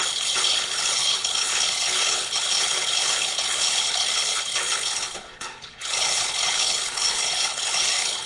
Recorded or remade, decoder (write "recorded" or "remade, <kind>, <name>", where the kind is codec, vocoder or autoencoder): remade, codec, HILCodec